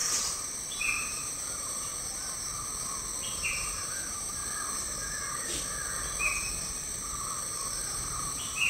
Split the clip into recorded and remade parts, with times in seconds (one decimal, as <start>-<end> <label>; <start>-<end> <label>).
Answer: 0.0-1.9 remade; 1.9-3.4 recorded; 3.4-4.4 remade; 4.4-7.8 recorded; 7.8-8.7 remade